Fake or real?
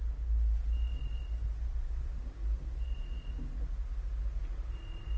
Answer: real